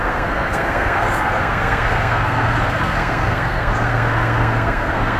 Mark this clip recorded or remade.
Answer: remade